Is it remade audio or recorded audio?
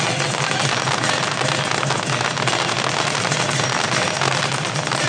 recorded